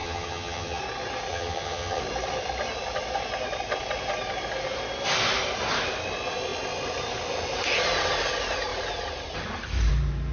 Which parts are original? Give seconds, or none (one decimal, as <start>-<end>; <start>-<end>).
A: 0.8-1.3; 2.0-10.3